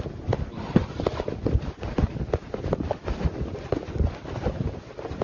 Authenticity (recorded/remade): recorded